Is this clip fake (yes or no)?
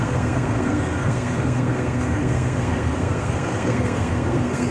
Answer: yes